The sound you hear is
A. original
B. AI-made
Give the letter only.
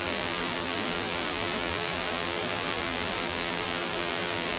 B